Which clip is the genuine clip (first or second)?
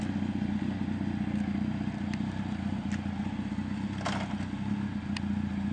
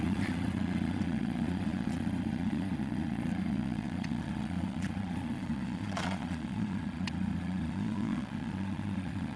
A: first